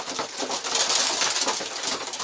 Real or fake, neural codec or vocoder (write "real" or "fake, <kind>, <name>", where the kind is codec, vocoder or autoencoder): real